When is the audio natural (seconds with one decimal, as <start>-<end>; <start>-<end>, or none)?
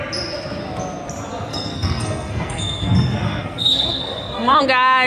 0.0-1.5; 4.6-5.1